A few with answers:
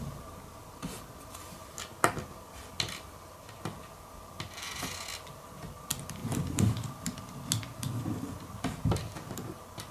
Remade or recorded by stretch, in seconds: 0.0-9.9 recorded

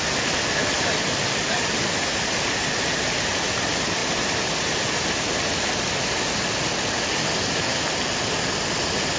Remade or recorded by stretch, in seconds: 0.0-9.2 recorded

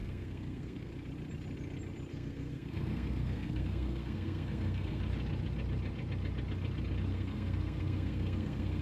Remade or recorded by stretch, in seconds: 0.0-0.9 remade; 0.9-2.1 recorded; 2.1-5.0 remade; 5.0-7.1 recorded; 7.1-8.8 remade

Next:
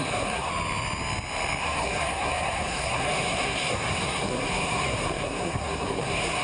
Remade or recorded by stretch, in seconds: 0.0-0.5 remade; 0.5-1.6 recorded; 1.6-6.4 remade